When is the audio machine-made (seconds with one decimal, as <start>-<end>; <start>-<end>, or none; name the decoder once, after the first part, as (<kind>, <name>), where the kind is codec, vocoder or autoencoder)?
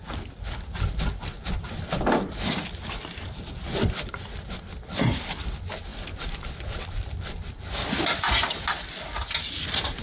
none